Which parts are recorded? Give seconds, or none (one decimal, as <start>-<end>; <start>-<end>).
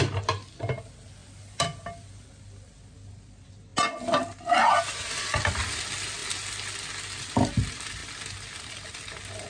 0.0-9.5